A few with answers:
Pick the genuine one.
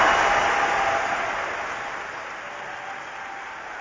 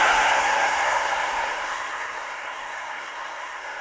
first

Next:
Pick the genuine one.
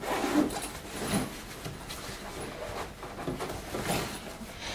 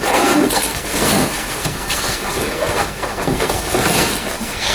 first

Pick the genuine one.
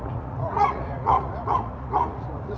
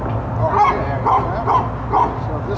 second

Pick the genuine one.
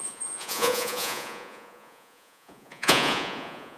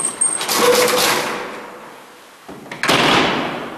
second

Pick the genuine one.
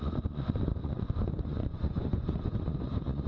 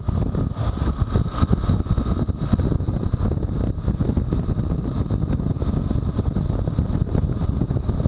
second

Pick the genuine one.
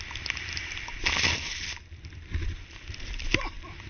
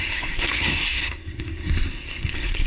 first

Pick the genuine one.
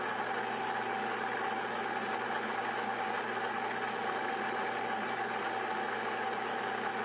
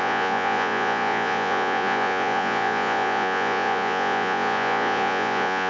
first